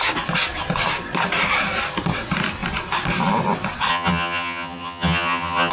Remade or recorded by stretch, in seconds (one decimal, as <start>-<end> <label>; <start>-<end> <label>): 0.0-3.9 recorded; 3.9-5.7 remade